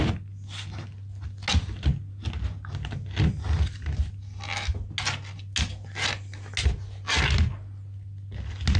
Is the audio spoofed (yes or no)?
no